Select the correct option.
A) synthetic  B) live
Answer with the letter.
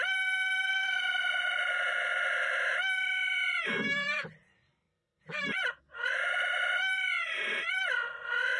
A